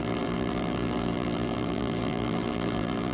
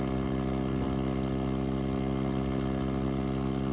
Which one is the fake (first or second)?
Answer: first